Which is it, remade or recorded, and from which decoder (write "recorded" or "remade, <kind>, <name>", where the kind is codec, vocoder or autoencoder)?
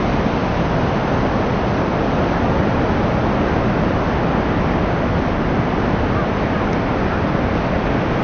recorded